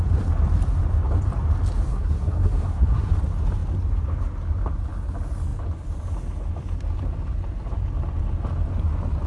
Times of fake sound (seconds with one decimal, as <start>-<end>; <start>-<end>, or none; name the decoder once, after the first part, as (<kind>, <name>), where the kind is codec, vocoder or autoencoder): 1.9-3.1 (codec, SNAC)